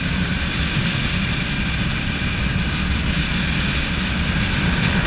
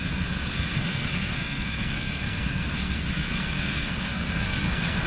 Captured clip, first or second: first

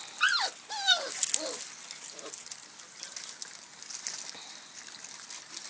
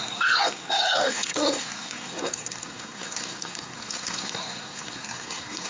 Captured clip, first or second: first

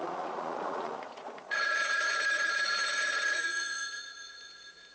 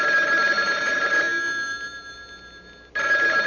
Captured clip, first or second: second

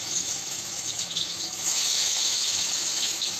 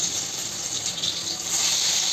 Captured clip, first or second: second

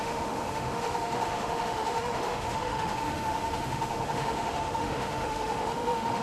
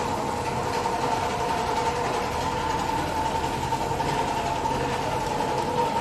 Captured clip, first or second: second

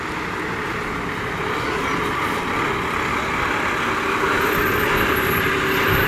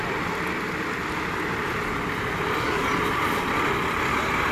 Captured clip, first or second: first